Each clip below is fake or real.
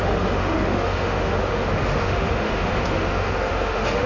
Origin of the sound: fake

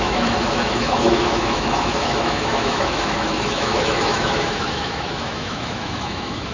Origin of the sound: fake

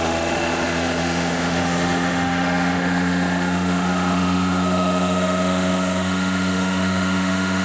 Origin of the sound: fake